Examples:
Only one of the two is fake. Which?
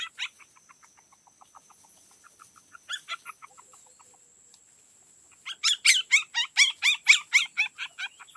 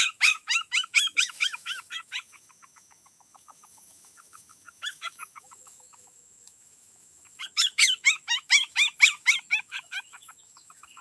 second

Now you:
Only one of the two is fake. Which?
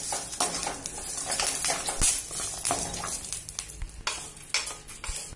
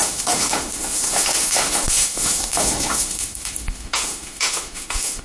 second